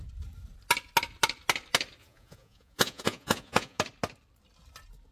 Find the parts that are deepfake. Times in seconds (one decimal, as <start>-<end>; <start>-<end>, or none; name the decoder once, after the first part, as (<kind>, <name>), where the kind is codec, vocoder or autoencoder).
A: 2.0-3.8 (vocoder, Vocos)